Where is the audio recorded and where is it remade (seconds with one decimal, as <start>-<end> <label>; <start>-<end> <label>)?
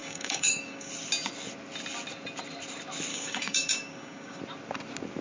0.0-0.9 remade; 0.9-3.1 recorded; 3.1-4.4 remade; 4.4-5.2 recorded